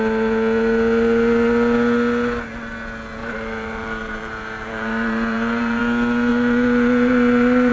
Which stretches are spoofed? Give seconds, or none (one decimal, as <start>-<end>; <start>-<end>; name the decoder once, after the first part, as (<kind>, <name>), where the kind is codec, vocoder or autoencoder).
3.2-5.8 (vocoder, BigVGAN v2); 6.3-7.7